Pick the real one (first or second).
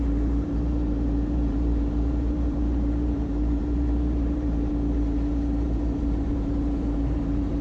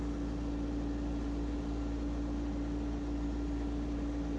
second